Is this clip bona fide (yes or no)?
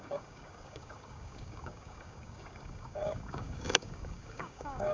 no